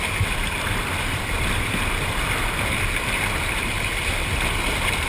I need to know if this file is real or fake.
real